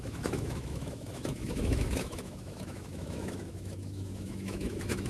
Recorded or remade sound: remade